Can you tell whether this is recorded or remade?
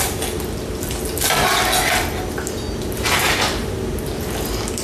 recorded